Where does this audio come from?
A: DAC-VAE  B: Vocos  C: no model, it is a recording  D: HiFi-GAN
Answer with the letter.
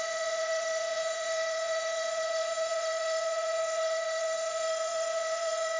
B